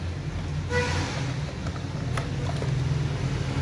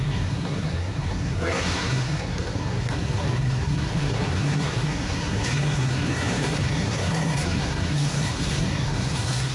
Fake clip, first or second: second